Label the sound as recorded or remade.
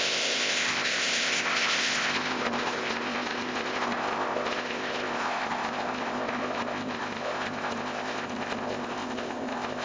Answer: remade